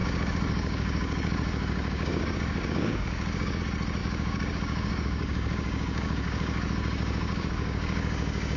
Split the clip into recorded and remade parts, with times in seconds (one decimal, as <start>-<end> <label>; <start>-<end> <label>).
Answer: 0.0-3.6 remade; 3.6-4.0 recorded; 4.0-8.6 remade